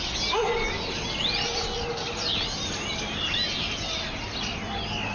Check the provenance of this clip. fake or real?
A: real